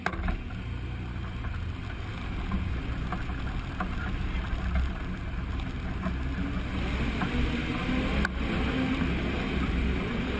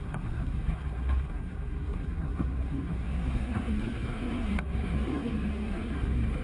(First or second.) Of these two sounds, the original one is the first